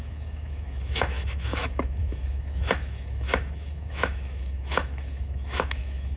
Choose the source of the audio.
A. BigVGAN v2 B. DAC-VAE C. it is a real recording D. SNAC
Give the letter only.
B